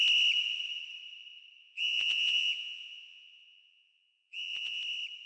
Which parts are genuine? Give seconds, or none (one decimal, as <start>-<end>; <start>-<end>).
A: 0.0-1.6; 4.8-5.3